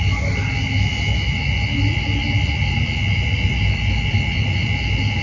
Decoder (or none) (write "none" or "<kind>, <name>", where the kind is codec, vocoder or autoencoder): none